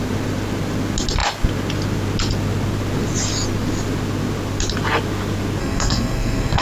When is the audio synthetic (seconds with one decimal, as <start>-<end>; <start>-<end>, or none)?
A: 5.6-6.6